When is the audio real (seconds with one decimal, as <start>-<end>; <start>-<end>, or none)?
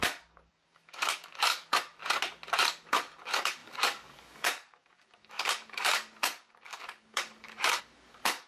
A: 2.0-2.7